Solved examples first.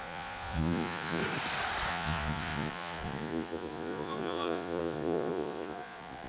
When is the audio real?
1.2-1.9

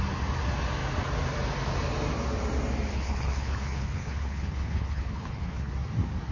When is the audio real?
0.0-2.9; 5.7-6.3

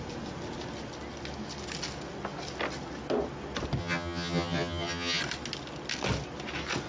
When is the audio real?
0.0-3.8; 5.2-6.9

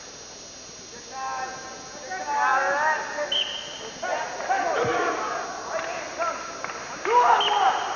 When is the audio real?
0.0-8.0

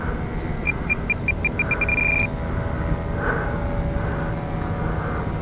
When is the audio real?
0.0-0.5; 1.0-5.4

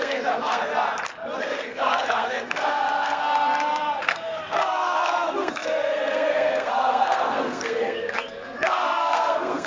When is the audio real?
0.7-1.4